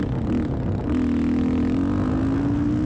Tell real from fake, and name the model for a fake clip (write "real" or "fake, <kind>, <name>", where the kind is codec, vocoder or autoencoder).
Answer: real